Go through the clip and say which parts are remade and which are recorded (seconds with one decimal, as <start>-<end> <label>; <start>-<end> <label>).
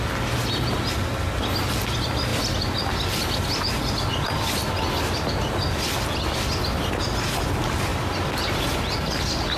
0.0-9.6 recorded